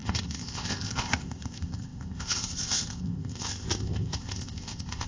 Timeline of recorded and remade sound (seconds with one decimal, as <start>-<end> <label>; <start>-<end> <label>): 0.0-5.1 remade